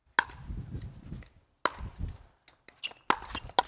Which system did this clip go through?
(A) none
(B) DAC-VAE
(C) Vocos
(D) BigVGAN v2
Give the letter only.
A